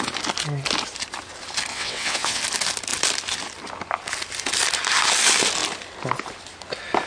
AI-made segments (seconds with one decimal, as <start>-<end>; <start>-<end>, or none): 1.7-2.4